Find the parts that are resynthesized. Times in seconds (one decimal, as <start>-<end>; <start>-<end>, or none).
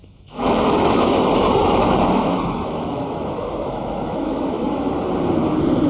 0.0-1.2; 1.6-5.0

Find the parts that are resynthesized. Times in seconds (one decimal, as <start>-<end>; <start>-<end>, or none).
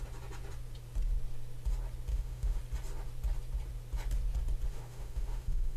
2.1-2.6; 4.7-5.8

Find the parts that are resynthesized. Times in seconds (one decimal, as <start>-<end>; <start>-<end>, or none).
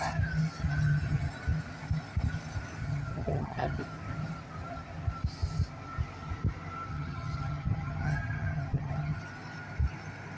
0.6-1.3; 2.8-3.8; 6.9-9.2